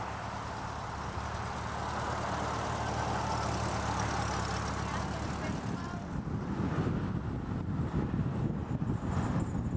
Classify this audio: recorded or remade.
recorded